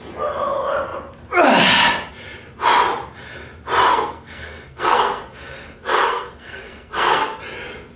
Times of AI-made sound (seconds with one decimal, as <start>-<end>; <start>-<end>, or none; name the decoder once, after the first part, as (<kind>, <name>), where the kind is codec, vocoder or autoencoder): 3.9-7.4 (codec, SNAC)